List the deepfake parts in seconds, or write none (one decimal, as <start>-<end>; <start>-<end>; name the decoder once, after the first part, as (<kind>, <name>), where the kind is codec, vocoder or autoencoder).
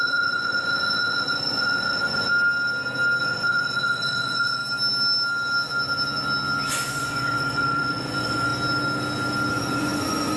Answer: 0.0-2.3 (vocoder, Vocos); 3.2-4.6; 6.9-8.5; 9.5-10.4